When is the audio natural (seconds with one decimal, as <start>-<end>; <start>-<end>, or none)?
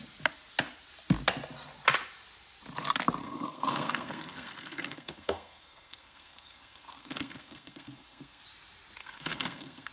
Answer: 0.0-3.2; 8.4-9.0